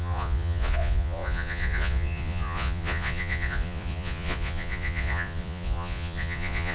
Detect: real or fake fake